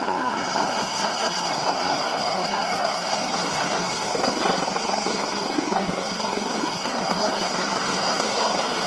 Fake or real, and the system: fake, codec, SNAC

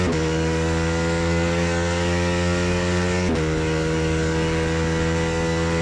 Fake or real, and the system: fake, codec, DAC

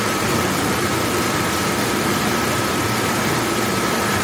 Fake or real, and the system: fake, vocoder, BigVGAN v2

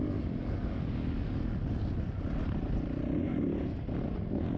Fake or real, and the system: real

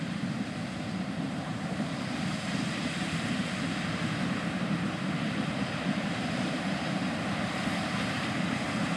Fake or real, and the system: fake, vocoder, BigVGAN v2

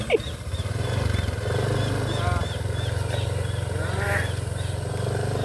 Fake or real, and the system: real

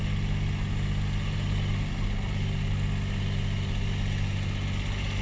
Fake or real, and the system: real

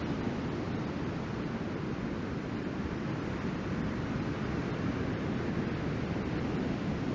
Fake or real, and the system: real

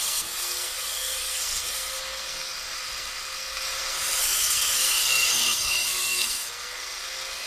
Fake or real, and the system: fake, codec, SNAC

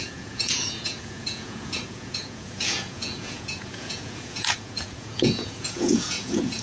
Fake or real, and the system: fake, vocoder, Vocos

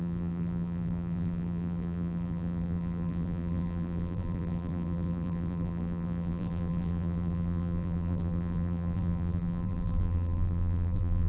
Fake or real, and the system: fake, vocoder, BigVGAN v2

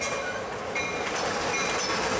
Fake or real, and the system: real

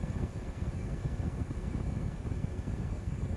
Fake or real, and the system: fake, codec, SNAC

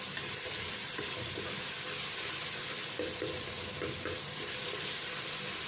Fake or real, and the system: fake, vocoder, BigVGAN v2